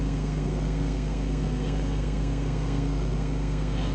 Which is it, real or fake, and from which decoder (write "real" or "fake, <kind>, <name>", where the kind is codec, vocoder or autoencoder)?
fake, codec, SNAC